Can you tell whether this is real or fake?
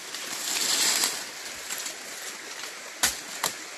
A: real